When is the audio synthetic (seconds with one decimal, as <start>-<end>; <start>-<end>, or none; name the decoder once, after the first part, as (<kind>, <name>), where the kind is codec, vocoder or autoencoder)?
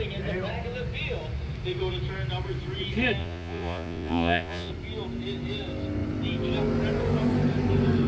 3.2-4.7 (vocoder, Vocos)